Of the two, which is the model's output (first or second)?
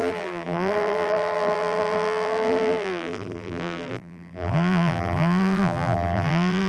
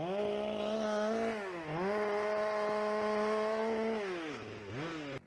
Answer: first